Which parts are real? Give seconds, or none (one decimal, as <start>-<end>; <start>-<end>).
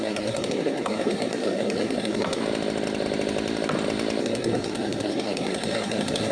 2.4-4.2